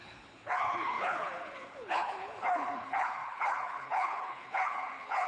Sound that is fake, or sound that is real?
fake